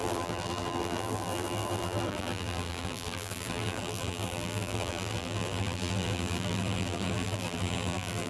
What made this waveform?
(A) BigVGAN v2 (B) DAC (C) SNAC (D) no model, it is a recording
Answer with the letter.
A